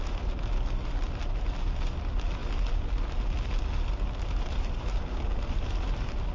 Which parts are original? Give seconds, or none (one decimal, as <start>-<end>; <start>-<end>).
0.0-6.3